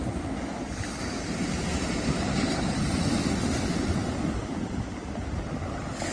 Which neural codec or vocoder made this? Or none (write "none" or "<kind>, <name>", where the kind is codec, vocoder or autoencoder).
none